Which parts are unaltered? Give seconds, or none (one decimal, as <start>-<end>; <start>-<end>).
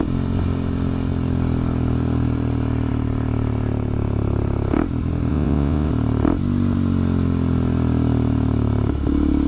0.0-5.3; 5.9-9.5